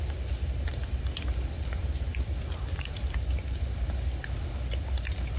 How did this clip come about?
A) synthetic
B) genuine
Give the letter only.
B